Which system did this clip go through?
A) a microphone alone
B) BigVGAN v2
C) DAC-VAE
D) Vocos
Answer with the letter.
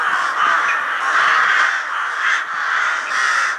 A